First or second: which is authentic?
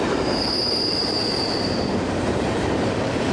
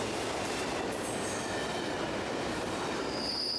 second